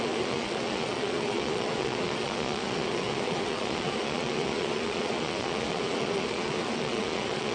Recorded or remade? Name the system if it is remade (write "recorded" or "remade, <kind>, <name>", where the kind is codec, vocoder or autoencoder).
remade, vocoder, Vocos